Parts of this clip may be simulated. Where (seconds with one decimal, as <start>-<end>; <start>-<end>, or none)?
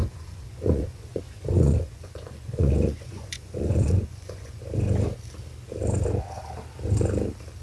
0.0-4.6